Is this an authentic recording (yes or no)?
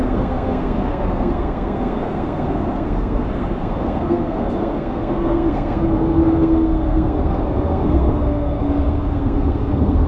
no